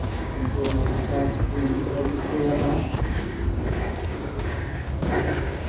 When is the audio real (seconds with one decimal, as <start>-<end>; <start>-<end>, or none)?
0.8-1.4